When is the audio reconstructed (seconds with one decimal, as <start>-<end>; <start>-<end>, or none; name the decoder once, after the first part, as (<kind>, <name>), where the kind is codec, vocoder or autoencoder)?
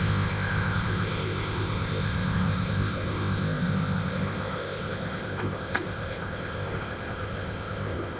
0.0-8.2 (codec, ZipCodec)